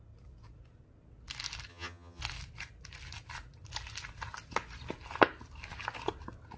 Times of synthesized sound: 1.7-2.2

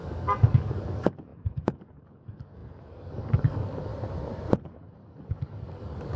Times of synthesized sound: 0.0-3.9; 4.5-6.2

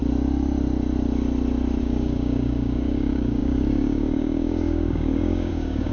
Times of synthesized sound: 1.8-5.9

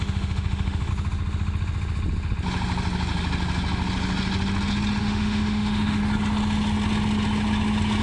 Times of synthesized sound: 0.0-0.9; 5.0-6.0

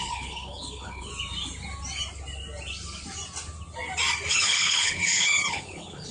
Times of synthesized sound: 0.0-1.1; 4.3-6.1